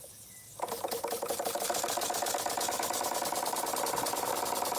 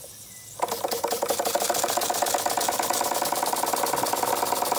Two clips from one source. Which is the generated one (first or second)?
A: first